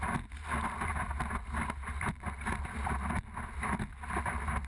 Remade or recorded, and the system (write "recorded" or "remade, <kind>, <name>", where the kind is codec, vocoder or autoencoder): recorded